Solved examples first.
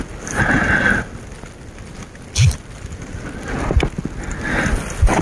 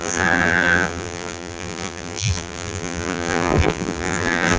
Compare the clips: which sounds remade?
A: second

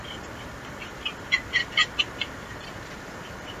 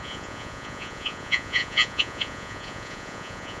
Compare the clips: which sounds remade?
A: second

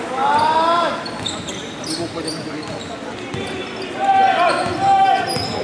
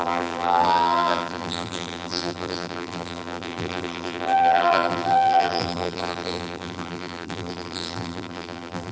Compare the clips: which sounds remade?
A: second